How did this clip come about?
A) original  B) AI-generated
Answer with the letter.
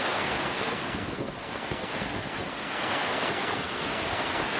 B